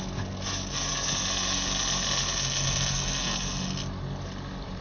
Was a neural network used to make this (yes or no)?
no